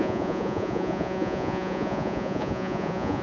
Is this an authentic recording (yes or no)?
no